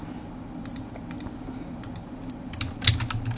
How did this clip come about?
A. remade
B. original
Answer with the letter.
B